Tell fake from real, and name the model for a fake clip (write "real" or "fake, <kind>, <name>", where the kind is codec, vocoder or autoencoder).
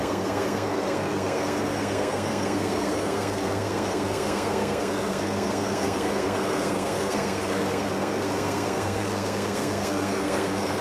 fake, codec, SNAC